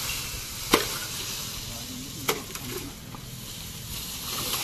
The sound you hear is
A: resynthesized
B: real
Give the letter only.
B